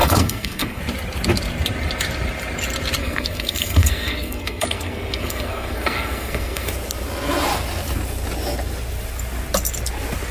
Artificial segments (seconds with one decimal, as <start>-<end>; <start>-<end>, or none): 0.0-0.8; 3.0-6.7